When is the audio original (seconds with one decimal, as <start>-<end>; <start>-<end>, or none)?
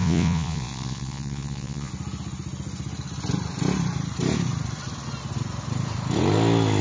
1.9-6.8